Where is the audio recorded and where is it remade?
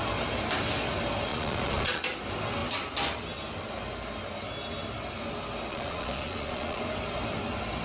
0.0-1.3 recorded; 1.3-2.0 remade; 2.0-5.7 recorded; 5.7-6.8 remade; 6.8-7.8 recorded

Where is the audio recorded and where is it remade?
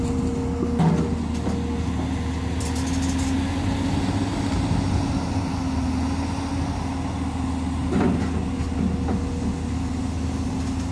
0.0-10.9 recorded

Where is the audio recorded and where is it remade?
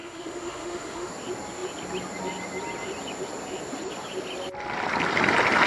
0.0-1.1 remade; 1.1-5.7 recorded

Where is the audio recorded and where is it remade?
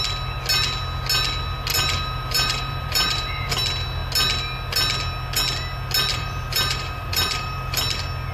0.0-1.7 recorded; 1.7-3.5 remade; 3.5-6.1 recorded; 6.1-7.8 remade; 7.8-8.3 recorded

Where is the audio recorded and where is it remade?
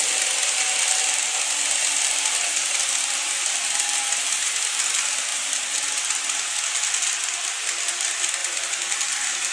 0.0-5.3 recorded; 5.3-6.0 remade; 6.0-9.5 recorded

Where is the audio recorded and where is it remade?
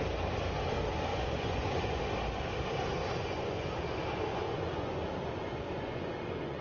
0.0-1.1 recorded; 1.1-2.0 remade; 2.0-3.0 recorded; 3.0-3.7 remade; 3.7-4.3 recorded; 4.3-6.6 remade